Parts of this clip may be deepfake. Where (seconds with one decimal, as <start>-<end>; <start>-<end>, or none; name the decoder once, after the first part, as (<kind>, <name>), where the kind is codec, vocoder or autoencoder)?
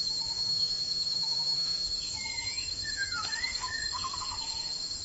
0.0-5.0 (autoencoder, DAC-VAE)